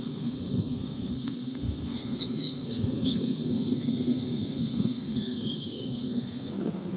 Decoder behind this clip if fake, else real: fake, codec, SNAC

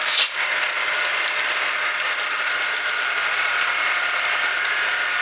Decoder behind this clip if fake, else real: real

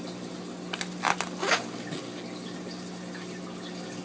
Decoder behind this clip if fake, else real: real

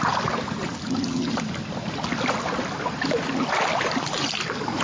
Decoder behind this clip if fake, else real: real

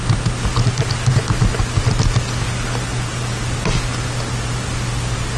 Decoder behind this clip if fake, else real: real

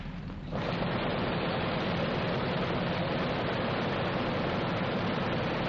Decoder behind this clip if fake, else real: real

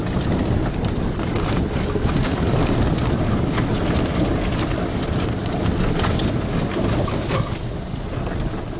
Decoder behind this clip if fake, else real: real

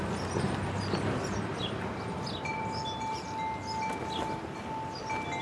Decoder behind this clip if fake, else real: real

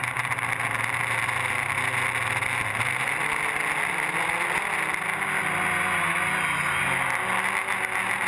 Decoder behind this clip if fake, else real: real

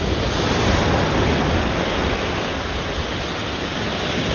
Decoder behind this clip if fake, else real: real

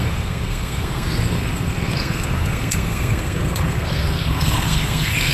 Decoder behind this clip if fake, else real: fake, codec, SNAC